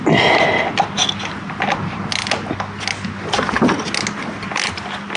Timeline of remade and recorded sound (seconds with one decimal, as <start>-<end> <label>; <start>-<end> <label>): 0.0-1.0 remade; 1.0-4.1 recorded; 4.1-5.2 remade